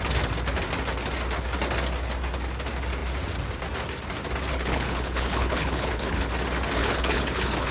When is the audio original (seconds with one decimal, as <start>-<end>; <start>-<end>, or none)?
0.0-4.5; 6.3-6.8